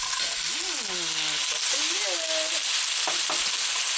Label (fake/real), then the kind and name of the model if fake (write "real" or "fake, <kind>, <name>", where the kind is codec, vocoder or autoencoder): real